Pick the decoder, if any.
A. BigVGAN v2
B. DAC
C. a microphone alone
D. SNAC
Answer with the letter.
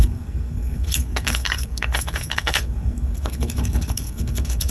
D